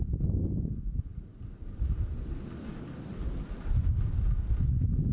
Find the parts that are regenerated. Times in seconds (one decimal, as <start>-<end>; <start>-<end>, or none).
none